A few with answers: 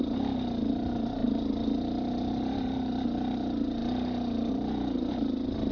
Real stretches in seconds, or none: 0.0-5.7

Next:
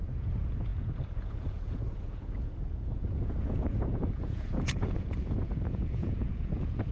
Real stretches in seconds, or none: none

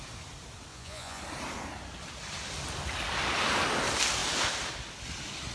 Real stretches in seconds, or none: 0.0-0.7; 1.2-5.5

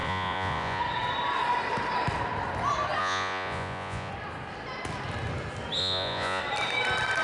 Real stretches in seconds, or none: 0.8-3.0; 4.1-5.8; 6.4-7.2

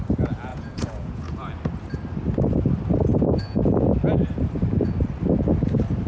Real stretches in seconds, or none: 0.0-0.5; 1.5-3.1; 3.6-6.1

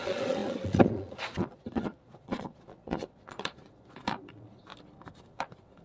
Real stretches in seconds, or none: 4.7-5.2